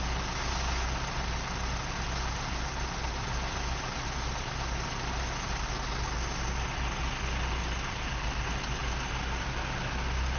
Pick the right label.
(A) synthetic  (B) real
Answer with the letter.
B